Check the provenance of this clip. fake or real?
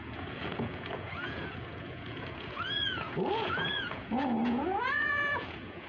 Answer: fake